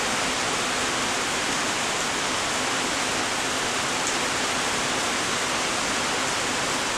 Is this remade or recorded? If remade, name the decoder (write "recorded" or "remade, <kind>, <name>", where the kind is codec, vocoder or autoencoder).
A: recorded